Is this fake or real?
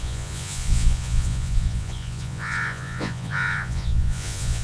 fake